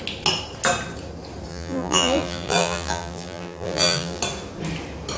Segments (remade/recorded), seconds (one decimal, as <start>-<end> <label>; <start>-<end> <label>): 0.0-1.5 recorded; 1.5-4.2 remade; 4.2-5.2 recorded